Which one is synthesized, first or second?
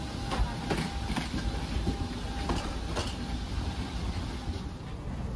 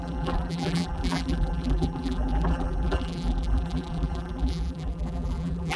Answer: second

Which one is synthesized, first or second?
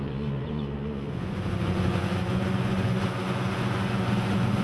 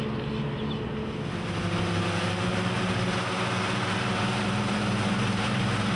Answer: first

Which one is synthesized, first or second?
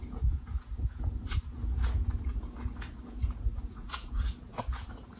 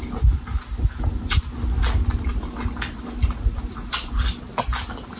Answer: first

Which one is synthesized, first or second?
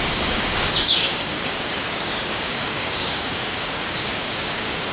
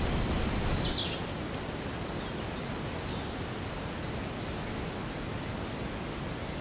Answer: first